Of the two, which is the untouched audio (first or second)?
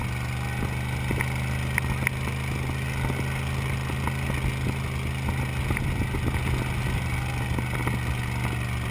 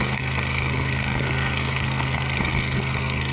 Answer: first